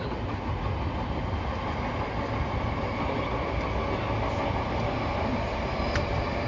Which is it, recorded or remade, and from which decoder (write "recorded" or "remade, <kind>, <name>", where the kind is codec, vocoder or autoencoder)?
recorded